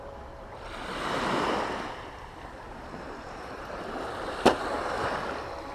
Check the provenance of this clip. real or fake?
fake